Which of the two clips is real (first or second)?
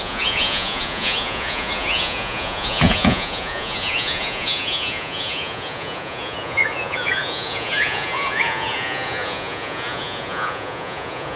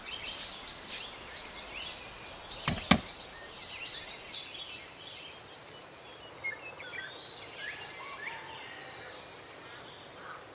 second